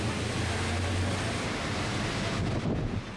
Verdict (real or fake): real